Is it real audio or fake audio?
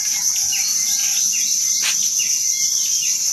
real